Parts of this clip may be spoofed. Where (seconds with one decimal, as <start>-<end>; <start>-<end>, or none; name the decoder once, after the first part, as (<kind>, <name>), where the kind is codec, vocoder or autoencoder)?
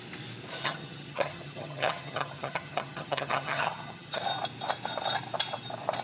0.6-4.2 (vocoder, HiFi-GAN)